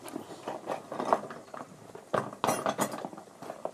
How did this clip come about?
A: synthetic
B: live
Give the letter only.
B